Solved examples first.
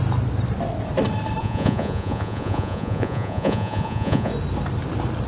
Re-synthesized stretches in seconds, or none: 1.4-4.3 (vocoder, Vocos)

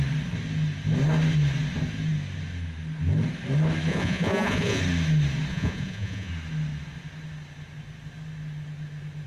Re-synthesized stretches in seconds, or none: 3.9-4.8 (vocoder, Vocos); 5.5-6.3

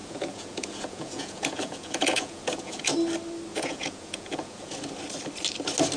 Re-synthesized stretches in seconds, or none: 0.0-2.9 (vocoder, Vocos); 3.5-4.7

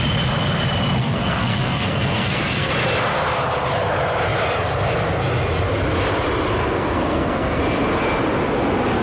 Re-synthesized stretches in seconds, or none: 1.0-2.7 (codec, SNAC); 6.6-7.6

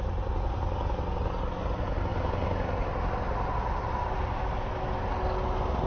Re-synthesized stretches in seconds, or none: none

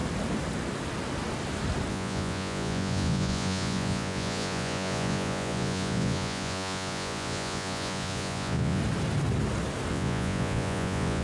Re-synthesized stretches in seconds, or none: 1.9-8.8 (vocoder, Vocos); 9.9-11.2

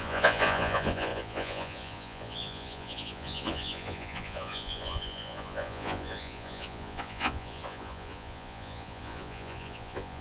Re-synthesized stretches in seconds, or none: 0.0-10.2 (vocoder, Vocos)

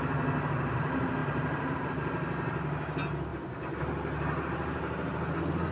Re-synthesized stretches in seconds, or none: 1.2-1.9 (vocoder, BigVGAN v2)